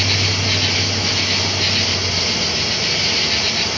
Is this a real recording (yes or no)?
yes